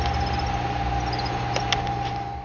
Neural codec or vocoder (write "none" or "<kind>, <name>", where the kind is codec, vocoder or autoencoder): none